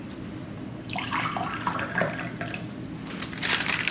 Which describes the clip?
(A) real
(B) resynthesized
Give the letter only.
B